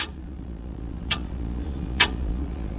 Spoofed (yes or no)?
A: yes